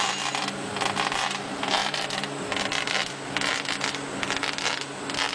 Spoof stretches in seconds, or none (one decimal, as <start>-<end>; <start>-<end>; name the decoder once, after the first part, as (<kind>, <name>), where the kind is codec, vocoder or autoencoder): 1.8-3.3 (vocoder, BigVGAN v2)